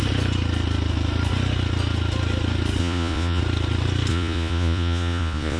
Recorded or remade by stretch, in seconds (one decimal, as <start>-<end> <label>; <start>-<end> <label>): 0.0-2.8 recorded; 2.8-3.4 remade; 3.4-4.1 recorded; 4.1-5.6 remade